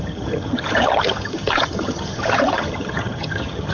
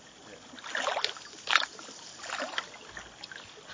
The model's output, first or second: first